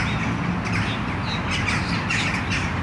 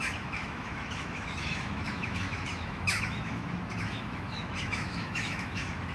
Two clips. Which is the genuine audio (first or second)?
first